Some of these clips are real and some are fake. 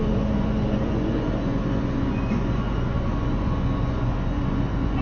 fake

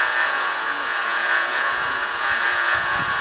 fake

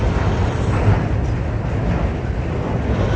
real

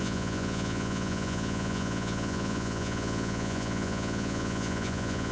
fake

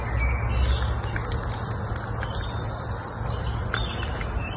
real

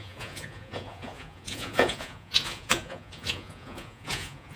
fake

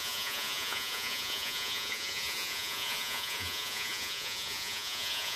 fake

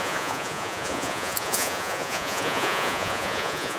fake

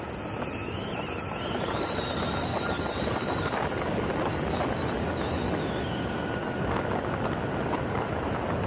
real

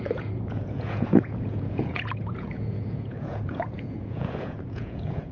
fake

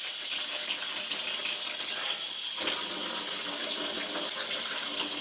real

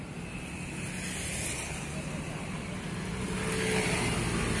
real